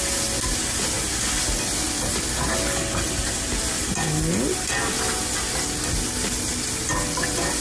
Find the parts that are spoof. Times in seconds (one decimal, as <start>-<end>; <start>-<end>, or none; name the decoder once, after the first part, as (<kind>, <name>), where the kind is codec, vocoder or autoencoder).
none